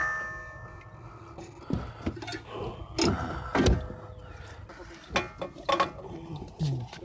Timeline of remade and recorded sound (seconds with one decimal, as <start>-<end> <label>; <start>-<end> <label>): 0.0-7.0 recorded